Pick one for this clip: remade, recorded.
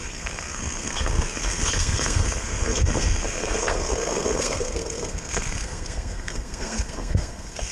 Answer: remade